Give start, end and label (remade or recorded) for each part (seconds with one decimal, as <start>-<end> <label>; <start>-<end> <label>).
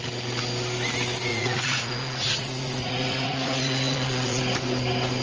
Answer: 0.0-1.3 recorded; 1.3-4.4 remade; 4.4-5.2 recorded